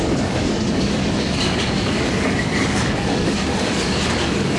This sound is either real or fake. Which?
fake